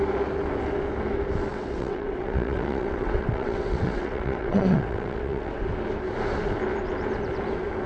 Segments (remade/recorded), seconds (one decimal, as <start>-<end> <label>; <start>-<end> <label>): 0.0-1.5 recorded; 1.5-5.6 remade; 5.6-7.9 recorded